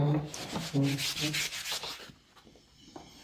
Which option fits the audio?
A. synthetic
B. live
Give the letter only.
B